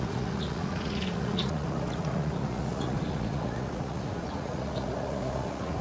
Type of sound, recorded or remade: remade